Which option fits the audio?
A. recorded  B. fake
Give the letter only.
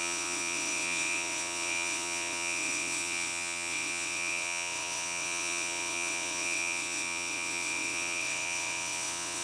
B